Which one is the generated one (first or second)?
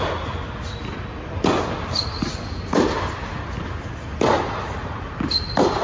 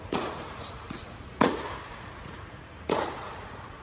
second